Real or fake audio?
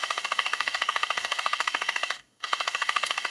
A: fake